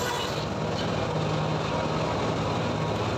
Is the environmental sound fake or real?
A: real